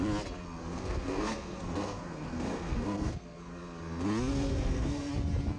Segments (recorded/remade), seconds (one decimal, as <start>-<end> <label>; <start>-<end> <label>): 0.0-0.6 recorded; 0.6-3.6 remade; 3.6-4.3 recorded; 4.3-5.1 remade; 5.1-5.6 recorded